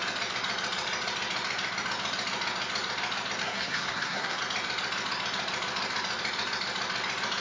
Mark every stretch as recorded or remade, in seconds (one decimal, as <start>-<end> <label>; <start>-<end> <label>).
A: 0.0-3.4 recorded; 3.4-4.4 remade; 4.4-7.4 recorded